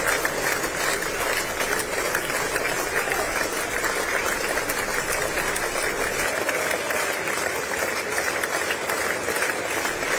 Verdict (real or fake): real